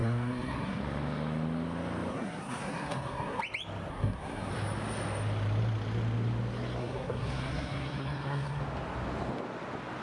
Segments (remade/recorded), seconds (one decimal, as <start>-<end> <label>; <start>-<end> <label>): 0.0-0.8 remade; 0.8-2.1 recorded; 2.1-3.4 remade; 3.4-3.9 recorded; 3.9-4.5 remade; 4.5-6.8 recorded; 6.8-8.6 remade; 8.6-10.0 recorded